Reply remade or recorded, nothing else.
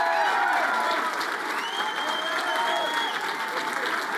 recorded